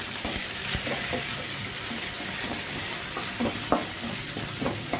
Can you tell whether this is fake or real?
real